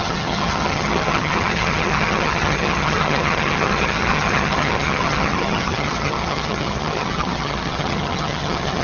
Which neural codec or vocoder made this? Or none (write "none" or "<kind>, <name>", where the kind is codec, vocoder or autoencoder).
vocoder, HiFi-GAN